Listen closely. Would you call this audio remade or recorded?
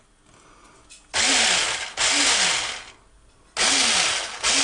recorded